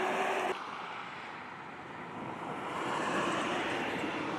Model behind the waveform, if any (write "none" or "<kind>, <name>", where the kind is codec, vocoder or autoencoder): vocoder, BigVGAN v2